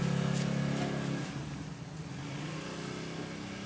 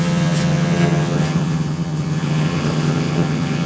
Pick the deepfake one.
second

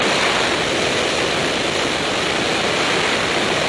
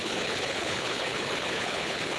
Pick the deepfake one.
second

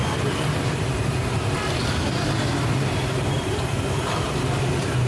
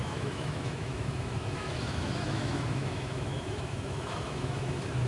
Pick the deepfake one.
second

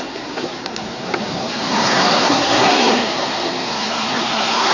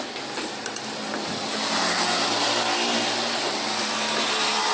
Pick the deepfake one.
first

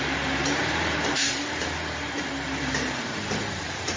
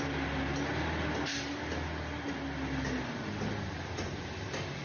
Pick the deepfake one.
first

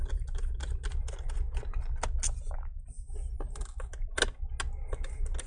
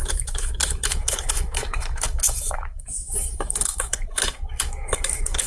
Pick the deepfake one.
second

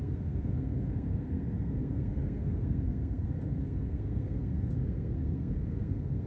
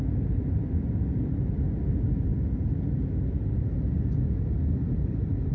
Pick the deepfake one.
first